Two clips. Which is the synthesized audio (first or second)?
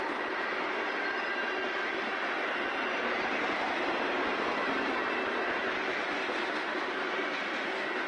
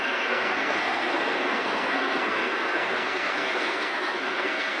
second